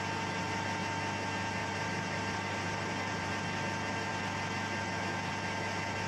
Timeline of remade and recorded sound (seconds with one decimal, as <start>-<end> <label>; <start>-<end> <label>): 0.0-1.6 recorded; 1.6-3.3 remade; 3.3-6.1 recorded